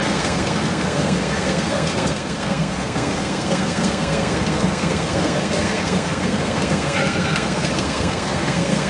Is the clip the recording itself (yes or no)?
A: no